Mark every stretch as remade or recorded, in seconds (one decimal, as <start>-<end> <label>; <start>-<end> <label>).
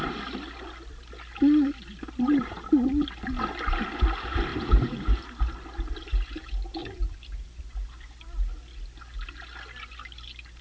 0.0-4.5 recorded; 4.5-5.2 remade; 5.2-6.8 recorded; 6.8-7.6 remade; 7.6-10.6 recorded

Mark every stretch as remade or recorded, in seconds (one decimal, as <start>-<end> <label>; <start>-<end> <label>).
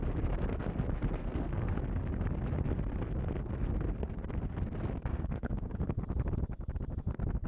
0.0-1.2 recorded; 1.2-1.8 remade; 1.8-5.1 recorded; 5.1-6.0 remade; 6.0-7.5 recorded